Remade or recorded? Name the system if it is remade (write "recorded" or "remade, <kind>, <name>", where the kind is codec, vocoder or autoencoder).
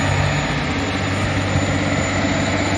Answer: recorded